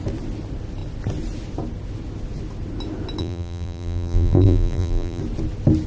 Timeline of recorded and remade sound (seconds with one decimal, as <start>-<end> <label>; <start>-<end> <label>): 0.0-3.2 recorded; 3.2-5.2 remade; 5.2-5.9 recorded